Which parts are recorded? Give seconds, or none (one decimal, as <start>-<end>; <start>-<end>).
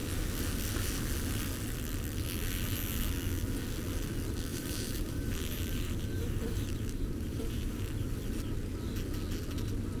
0.0-4.5; 7.9-10.0